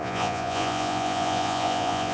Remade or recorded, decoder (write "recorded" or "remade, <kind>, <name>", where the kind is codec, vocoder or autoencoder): remade, vocoder, Vocos